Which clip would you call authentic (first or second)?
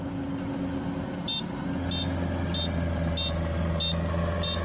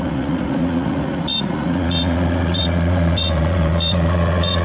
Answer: first